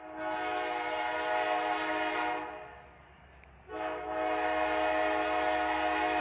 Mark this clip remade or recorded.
recorded